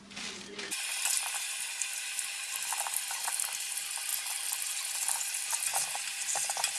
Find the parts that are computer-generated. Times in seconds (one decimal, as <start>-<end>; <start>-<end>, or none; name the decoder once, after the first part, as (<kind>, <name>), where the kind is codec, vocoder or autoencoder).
none